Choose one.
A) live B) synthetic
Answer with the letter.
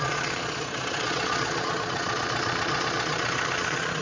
B